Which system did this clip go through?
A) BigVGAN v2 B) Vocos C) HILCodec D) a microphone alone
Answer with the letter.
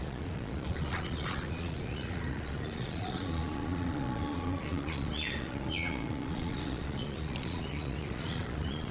B